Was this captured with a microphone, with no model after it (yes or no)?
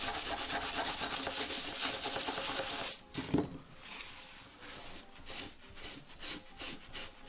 yes